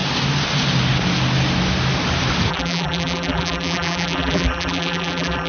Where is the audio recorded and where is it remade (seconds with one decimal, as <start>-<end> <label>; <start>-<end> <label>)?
0.0-2.5 recorded; 2.5-5.5 remade